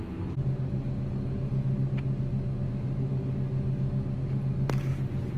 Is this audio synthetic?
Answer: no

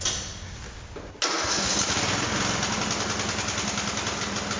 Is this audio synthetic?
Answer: no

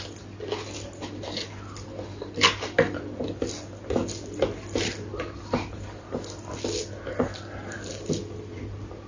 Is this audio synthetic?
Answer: no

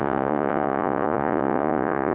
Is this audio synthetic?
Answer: yes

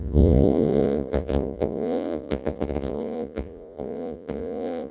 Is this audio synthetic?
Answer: yes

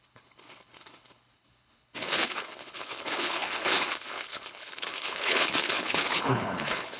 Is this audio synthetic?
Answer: yes